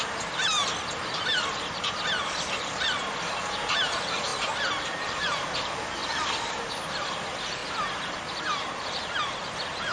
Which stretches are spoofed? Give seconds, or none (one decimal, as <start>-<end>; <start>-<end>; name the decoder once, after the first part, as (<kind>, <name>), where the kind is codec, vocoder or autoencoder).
0.0-0.6 (vocoder, BigVGAN v2); 2.2-4.3; 4.8-6.0; 6.5-7.6; 8.1-9.9